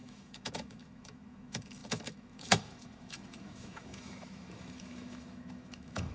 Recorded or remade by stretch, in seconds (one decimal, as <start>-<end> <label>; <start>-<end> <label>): 0.0-6.1 remade